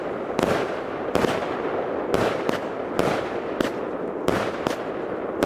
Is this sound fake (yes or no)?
no